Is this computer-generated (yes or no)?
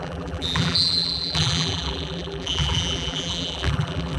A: yes